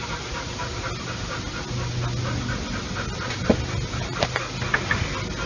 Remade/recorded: recorded